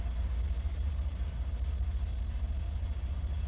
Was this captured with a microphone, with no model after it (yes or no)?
yes